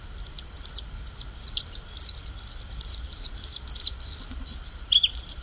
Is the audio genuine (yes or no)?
yes